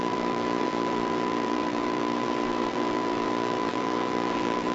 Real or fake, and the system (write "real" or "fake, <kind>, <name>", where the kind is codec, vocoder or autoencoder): fake, vocoder, BigVGAN v2